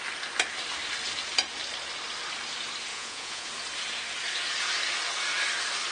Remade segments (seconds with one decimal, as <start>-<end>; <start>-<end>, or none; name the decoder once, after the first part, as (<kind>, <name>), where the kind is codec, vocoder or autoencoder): 2.9-3.5 (vocoder, Vocos)